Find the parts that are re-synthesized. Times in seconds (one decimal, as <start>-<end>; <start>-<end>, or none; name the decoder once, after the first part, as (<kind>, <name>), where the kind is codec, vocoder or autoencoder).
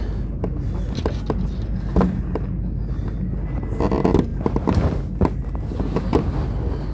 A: 4.3-5.0 (vocoder, BigVGAN v2)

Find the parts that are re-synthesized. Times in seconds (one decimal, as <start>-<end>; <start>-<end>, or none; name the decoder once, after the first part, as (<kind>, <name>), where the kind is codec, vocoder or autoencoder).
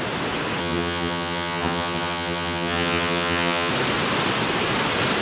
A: 0.6-3.7 (vocoder, HiFi-GAN)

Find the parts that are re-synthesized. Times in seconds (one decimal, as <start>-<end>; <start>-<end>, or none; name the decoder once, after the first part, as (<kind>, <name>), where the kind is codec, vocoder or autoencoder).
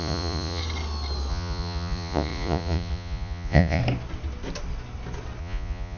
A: 0.0-0.6 (vocoder, Vocos); 1.3-3.8; 5.4-6.0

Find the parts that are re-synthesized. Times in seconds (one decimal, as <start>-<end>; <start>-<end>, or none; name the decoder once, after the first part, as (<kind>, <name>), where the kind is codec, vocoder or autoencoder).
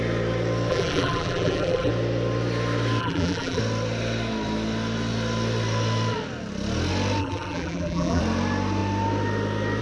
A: 0.7-1.9 (vocoder, BigVGAN v2); 3.0-3.6; 7.2-8.2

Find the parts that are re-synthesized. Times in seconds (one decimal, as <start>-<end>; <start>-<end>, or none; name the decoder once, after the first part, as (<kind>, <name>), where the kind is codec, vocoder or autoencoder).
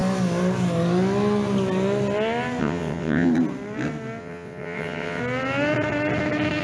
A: 2.6-3.3 (vocoder, WaveNeXt); 4.2-5.2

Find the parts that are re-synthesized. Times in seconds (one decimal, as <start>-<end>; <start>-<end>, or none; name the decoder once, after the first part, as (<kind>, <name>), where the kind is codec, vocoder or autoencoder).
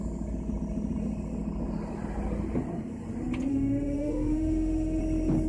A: 3.5-5.0 (autoencoder, DAC-VAE)